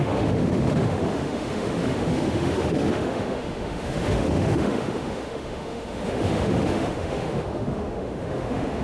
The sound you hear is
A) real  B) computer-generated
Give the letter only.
B